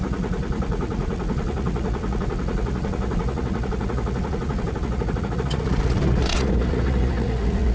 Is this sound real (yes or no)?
no